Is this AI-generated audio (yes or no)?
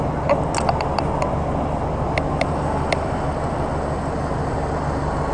no